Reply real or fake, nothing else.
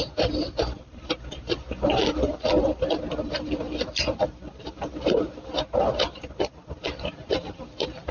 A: fake